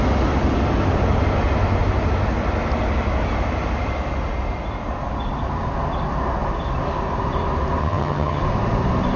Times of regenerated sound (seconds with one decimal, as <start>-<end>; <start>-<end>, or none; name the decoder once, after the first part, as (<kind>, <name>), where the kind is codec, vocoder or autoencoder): 7.8-8.4 (vocoder, HiFi-GAN)

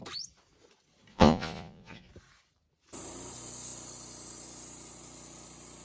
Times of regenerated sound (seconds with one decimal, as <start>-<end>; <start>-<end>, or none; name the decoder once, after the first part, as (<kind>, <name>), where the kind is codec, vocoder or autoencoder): 1.1-2.1 (vocoder, Vocos)